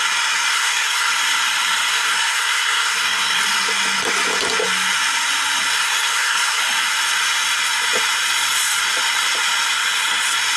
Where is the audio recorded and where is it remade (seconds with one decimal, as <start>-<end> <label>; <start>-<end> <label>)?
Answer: 0.0-0.5 recorded; 0.5-1.1 remade; 1.1-1.9 recorded; 1.9-3.4 remade; 3.4-5.7 recorded; 5.7-6.6 remade; 6.6-10.6 recorded